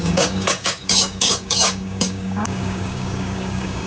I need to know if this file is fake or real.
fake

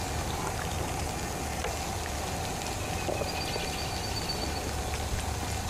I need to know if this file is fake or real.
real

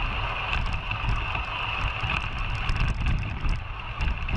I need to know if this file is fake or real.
real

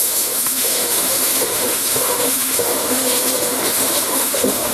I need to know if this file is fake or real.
fake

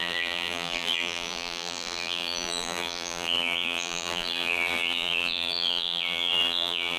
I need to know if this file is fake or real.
fake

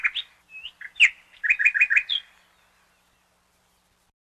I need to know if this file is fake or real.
real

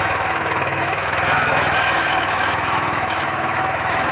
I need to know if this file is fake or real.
fake